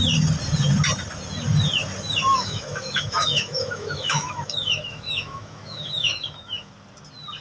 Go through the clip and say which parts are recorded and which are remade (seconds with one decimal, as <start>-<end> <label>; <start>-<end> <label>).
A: 0.0-2.3 recorded; 2.3-6.7 remade; 6.7-7.4 recorded